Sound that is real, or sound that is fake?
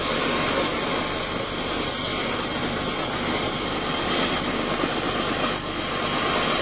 real